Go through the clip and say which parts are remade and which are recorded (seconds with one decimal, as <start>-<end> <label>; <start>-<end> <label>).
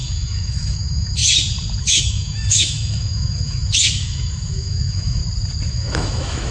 0.0-1.2 remade; 1.2-1.8 recorded; 1.8-5.2 remade; 5.2-5.7 recorded; 5.7-6.5 remade